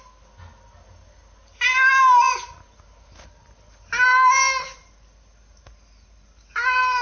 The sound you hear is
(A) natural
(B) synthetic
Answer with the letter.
A